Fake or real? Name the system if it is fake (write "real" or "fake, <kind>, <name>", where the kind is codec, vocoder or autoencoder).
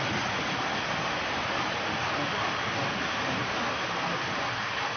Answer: real